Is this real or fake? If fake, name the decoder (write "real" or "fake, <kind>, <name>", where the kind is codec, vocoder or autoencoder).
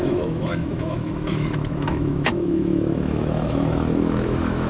fake, autoencoder, DAC-VAE